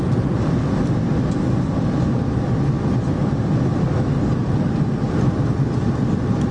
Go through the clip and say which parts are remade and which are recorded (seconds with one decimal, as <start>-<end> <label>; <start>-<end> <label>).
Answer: 0.0-6.5 recorded